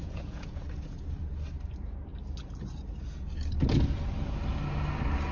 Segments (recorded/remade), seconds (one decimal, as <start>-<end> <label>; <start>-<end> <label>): 0.0-1.0 remade; 1.0-5.3 recorded